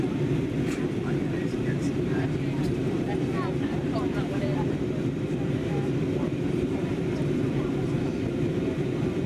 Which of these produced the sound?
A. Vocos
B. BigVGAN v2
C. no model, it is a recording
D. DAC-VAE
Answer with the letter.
B